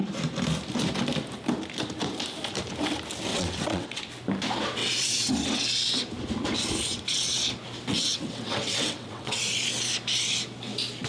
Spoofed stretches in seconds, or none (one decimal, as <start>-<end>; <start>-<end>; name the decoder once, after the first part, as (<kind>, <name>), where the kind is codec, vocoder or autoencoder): 3.3-4.0 (vocoder, WaveNeXt); 4.8-5.3; 7.9-9.4